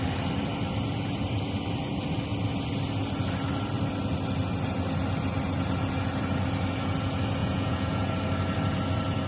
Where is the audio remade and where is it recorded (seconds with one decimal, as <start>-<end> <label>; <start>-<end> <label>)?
0.0-7.4 recorded; 7.4-8.1 remade; 8.1-9.3 recorded